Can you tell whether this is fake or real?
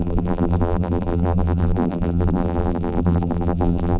fake